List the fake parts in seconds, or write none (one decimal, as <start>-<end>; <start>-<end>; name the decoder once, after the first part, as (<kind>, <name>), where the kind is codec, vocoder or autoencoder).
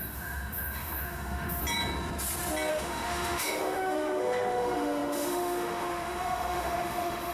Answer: 0.0-1.6 (autoencoder, DAC-VAE); 2.7-7.3